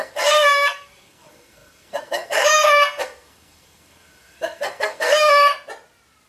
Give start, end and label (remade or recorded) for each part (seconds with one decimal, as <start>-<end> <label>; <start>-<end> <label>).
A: 0.0-5.5 remade; 5.5-6.3 recorded